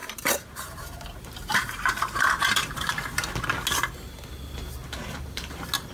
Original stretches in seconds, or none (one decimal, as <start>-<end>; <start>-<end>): 2.9-4.8; 5.5-5.9